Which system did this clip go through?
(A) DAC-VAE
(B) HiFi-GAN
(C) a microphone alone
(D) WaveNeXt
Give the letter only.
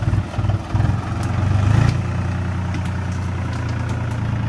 C